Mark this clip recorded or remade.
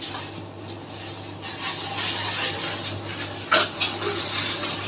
recorded